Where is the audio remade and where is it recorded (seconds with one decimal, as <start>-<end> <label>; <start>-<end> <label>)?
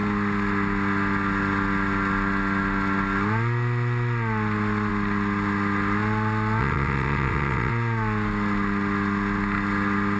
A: 0.0-6.6 recorded; 6.6-7.7 remade; 7.7-10.2 recorded